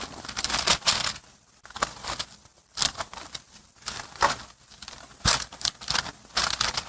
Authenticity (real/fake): fake